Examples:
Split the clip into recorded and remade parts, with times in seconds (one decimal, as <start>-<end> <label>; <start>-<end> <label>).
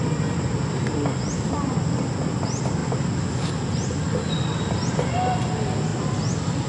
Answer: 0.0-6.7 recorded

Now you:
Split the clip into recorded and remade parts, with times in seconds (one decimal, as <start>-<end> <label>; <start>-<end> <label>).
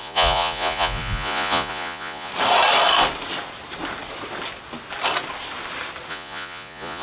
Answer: 0.0-2.3 remade; 2.3-6.1 recorded; 6.1-7.0 remade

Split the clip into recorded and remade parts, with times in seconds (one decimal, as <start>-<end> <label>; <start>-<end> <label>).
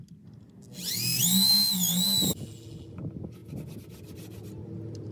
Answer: 0.0-5.1 recorded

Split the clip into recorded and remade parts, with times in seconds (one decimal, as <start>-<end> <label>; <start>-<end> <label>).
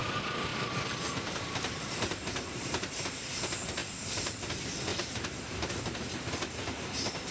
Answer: 0.0-0.5 recorded; 0.5-3.0 remade; 3.0-3.8 recorded; 3.8-4.5 remade; 4.5-4.9 recorded; 4.9-5.7 remade; 5.7-7.3 recorded